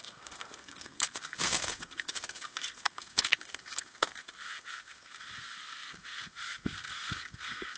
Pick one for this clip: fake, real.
fake